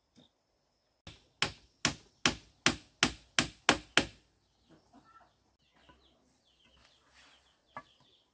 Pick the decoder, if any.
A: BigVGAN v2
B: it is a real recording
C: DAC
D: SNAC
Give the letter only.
B